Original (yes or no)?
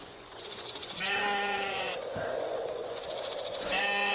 no